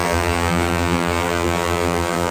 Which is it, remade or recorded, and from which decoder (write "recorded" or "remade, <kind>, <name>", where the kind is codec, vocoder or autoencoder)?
remade, vocoder, BigVGAN v2